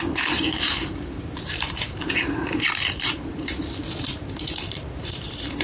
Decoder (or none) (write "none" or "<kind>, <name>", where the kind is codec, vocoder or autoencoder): vocoder, BigVGAN v2